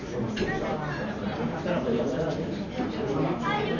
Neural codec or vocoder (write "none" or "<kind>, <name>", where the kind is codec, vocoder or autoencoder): none